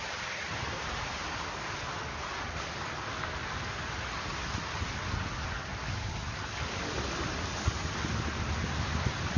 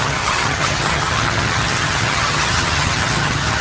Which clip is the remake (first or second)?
second